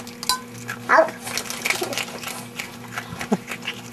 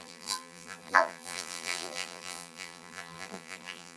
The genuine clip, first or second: first